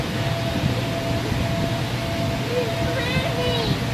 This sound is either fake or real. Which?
real